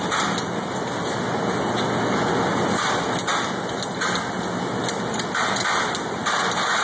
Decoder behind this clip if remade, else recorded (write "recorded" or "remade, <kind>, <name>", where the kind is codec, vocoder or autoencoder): recorded